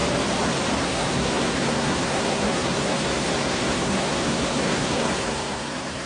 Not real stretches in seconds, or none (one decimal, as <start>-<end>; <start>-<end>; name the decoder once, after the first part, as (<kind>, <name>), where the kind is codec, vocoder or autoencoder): 0.8-6.1 (codec, SNAC)